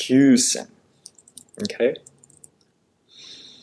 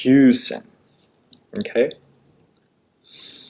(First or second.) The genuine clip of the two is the second